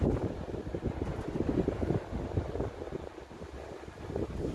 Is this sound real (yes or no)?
yes